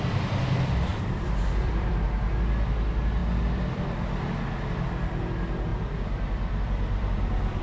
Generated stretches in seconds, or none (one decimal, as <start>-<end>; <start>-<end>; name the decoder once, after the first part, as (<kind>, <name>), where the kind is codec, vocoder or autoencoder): 0.9-1.9 (vocoder, BigVGAN v2); 3.2-3.8; 5.7-7.6